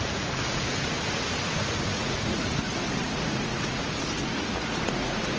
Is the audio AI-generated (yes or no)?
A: yes